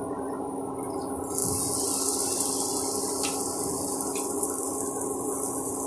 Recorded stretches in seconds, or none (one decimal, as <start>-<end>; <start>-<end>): 0.0-5.9